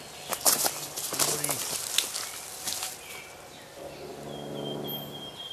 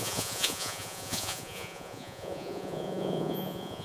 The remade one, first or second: second